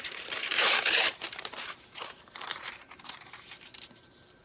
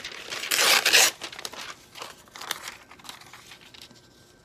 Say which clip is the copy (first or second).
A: first